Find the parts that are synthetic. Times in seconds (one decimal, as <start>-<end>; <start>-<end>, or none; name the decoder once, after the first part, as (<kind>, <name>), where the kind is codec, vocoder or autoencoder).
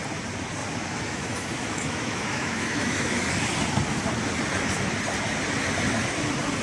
0.6-3.3 (autoencoder, DAC-VAE)